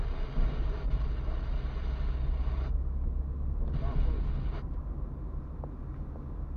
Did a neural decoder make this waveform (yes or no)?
no